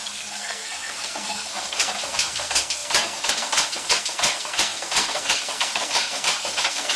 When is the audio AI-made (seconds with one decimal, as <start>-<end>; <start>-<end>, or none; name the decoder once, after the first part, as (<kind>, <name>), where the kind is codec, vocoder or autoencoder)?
0.0-7.0 (codec, SNAC)